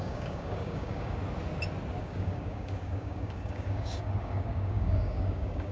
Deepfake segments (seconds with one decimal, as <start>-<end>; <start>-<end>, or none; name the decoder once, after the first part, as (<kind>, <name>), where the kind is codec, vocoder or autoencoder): 0.0-1.2 (codec, DAC); 2.0-5.7